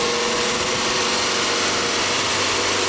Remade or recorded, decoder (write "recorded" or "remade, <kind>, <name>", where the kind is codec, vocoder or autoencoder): recorded